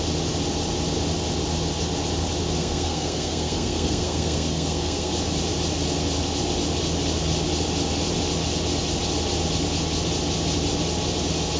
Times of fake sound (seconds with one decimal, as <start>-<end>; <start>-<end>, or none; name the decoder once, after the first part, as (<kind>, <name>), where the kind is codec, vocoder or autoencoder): 2.6-5.1 (codec, SNAC)